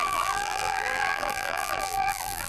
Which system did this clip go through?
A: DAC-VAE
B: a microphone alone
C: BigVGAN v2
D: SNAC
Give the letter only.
C